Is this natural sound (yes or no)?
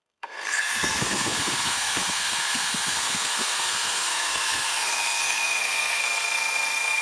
no